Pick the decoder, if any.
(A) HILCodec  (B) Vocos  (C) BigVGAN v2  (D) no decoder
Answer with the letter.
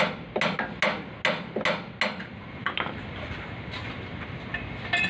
D